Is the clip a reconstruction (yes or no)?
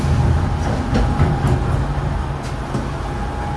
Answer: no